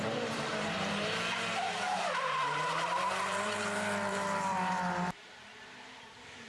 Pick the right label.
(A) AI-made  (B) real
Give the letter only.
A